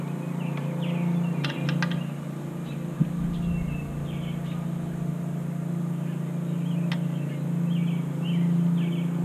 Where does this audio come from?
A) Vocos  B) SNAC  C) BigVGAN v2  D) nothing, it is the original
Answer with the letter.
D